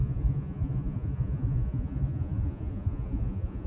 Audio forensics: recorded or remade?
remade